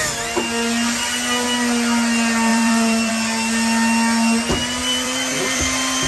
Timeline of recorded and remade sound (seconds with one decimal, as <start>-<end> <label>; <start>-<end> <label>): 0.0-2.5 recorded; 2.5-3.1 remade; 3.1-4.8 recorded; 4.8-6.1 remade